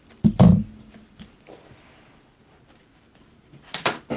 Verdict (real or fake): real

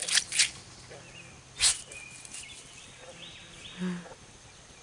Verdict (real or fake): real